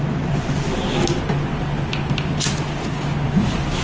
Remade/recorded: recorded